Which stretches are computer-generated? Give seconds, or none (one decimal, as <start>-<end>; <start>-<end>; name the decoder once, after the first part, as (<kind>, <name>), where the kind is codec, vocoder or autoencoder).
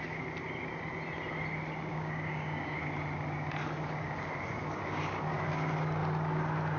1.9-2.8 (codec, DAC)